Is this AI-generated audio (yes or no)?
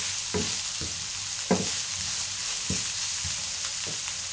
no